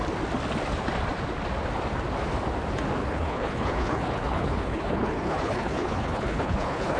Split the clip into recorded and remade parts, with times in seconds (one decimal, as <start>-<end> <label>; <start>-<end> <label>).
0.0-3.0 recorded; 3.0-7.0 remade